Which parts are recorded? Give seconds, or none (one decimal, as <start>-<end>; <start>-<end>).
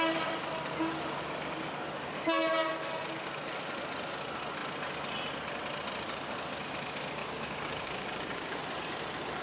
0.0-7.2; 8.6-9.4